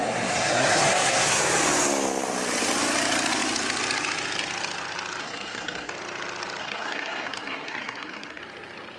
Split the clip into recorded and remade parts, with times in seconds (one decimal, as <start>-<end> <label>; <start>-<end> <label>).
0.0-1.4 remade; 1.4-5.2 recorded; 5.2-5.9 remade; 5.9-6.6 recorded; 6.6-8.4 remade; 8.4-9.0 recorded